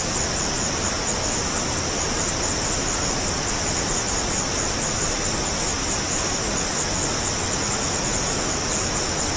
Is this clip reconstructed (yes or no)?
no